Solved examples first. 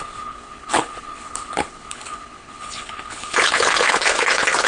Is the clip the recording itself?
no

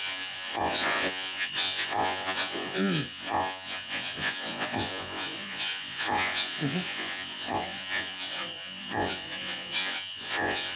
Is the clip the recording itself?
no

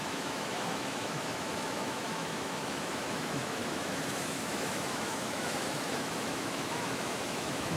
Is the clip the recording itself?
no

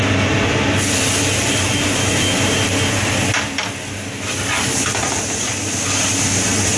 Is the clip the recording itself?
yes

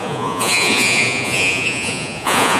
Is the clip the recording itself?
no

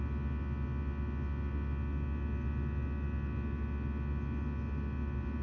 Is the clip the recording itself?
yes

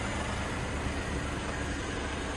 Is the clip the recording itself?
yes